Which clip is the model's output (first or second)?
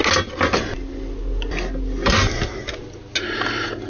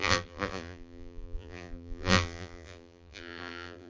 second